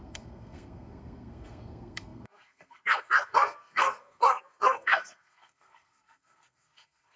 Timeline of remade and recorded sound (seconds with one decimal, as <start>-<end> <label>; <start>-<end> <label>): 0.0-7.2 remade